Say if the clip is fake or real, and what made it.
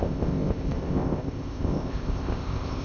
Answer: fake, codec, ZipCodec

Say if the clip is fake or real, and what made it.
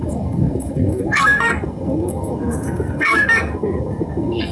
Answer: fake, codec, SNAC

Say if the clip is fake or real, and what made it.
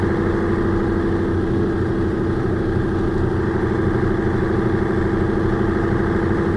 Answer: real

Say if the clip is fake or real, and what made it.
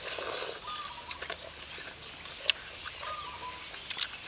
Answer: real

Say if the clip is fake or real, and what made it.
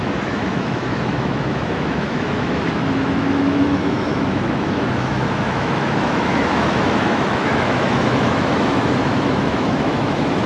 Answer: fake, autoencoder, DAC-VAE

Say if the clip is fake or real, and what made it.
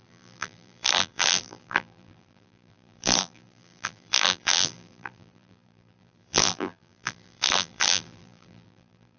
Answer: fake, vocoder, BigVGAN v2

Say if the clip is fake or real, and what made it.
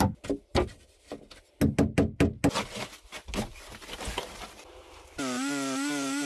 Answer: real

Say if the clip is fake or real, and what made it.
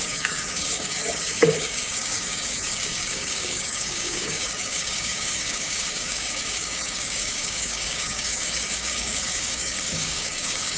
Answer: fake, codec, DAC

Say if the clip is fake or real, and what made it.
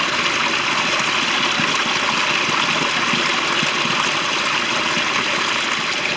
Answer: real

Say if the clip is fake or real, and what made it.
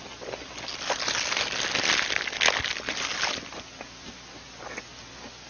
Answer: real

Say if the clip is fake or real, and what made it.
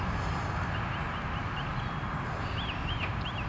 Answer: real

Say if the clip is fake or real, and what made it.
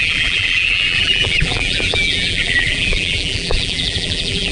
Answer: fake, vocoder, BigVGAN v2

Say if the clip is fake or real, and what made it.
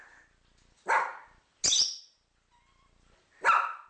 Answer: real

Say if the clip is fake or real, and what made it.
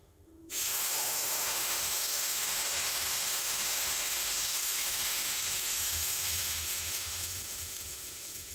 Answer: fake, autoencoder, DAC-VAE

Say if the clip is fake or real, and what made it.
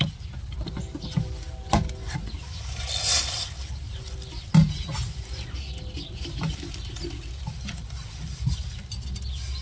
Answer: real